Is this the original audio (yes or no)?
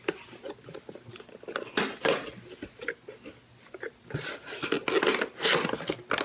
yes